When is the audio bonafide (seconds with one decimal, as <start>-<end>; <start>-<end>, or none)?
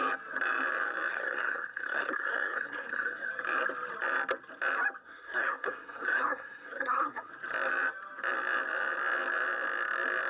0.0-1.1; 3.3-5.0; 7.3-10.3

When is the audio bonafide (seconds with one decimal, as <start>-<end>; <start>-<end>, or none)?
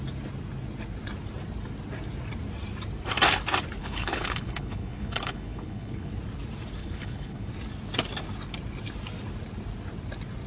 0.0-3.8; 6.1-6.8; 7.5-10.5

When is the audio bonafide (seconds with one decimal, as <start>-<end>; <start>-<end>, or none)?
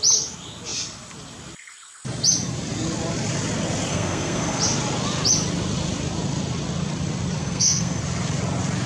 0.0-3.9; 4.6-7.4; 8.0-8.9